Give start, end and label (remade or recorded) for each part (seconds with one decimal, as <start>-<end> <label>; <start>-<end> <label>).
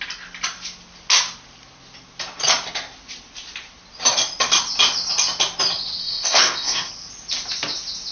0.0-6.0 recorded; 6.0-6.9 remade; 6.9-8.1 recorded